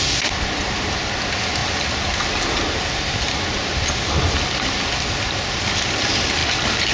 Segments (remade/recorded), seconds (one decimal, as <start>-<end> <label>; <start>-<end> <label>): 0.0-6.4 remade; 6.4-6.9 recorded

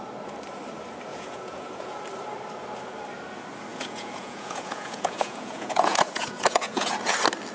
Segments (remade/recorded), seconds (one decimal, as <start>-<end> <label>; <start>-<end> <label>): 0.0-1.1 recorded; 1.1-2.0 remade; 2.0-3.7 recorded; 3.7-7.1 remade; 7.1-7.5 recorded

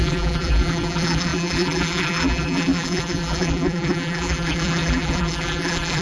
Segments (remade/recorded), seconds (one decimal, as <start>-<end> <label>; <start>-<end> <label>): 0.0-6.0 remade

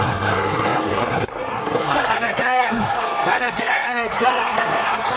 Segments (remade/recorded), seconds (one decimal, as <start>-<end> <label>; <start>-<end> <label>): 0.0-5.2 remade

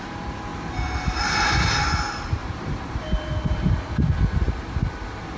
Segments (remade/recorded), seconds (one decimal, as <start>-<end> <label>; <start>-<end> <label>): 0.0-2.4 recorded; 2.4-4.5 remade; 4.5-5.4 recorded

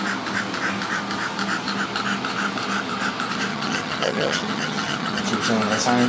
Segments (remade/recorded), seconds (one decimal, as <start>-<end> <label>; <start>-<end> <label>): 0.0-3.5 recorded; 3.5-5.2 remade; 5.2-6.1 recorded